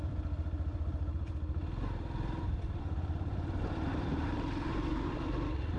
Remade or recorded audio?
remade